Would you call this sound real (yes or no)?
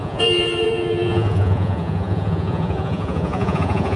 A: no